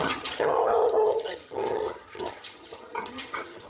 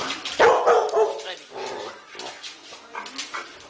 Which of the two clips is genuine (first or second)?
second